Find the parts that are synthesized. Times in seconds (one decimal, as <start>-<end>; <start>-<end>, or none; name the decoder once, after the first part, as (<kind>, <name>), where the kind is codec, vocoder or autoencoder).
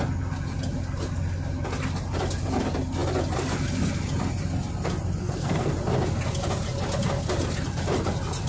5.2-5.7 (codec, SNAC)